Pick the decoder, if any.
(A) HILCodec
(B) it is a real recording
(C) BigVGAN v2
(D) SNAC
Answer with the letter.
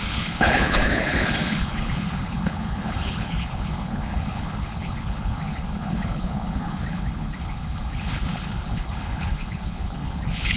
A